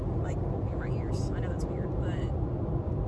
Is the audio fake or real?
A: real